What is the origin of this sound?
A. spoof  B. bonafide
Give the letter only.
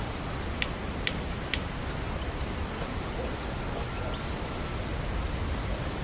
A